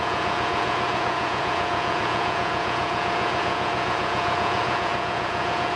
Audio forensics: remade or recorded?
remade